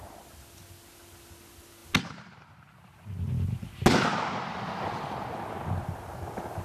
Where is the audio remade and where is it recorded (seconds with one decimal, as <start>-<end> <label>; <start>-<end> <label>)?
0.0-6.6 recorded